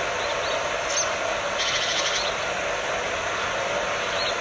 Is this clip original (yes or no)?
yes